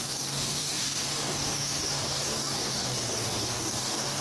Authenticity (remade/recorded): remade